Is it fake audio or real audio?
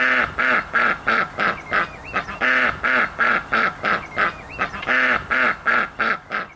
real